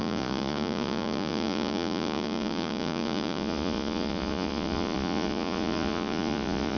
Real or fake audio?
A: fake